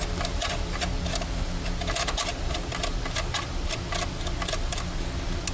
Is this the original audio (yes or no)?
yes